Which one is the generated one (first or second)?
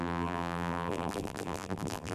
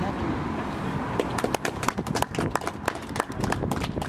first